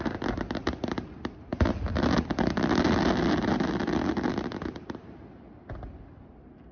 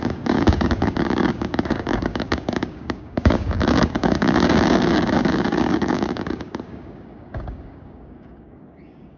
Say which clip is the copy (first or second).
second